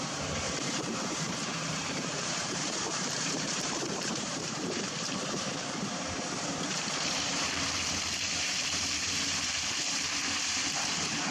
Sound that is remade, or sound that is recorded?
remade